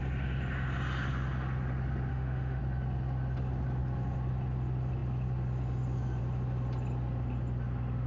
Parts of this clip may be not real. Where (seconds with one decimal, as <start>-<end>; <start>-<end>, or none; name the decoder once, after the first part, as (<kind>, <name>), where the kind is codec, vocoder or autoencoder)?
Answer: 2.1-2.6 (autoencoder, DAC-VAE)